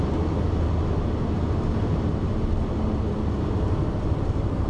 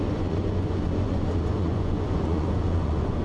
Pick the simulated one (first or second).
second